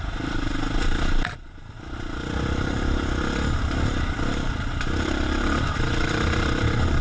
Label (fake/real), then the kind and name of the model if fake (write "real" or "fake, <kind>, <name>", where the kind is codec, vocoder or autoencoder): fake, vocoder, BigVGAN v2